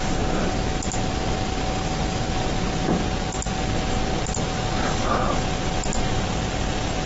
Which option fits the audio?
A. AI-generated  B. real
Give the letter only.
B